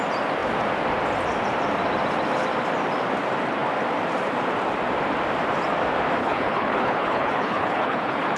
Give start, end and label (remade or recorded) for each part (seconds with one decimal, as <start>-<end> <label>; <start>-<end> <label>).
0.0-6.2 recorded; 6.2-8.4 remade

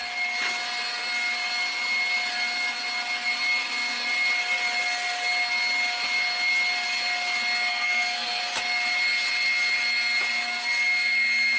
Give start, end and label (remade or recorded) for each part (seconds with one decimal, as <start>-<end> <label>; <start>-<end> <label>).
0.0-7.7 recorded; 7.7-8.4 remade; 8.4-11.6 recorded